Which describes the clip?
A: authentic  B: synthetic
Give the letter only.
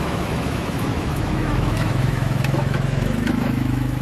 B